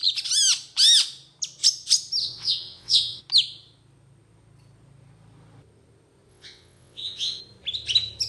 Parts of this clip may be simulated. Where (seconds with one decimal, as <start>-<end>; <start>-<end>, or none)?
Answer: 2.2-3.2; 6.3-7.4